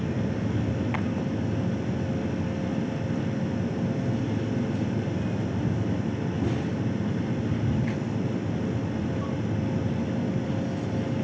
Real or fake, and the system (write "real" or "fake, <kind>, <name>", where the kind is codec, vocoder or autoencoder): real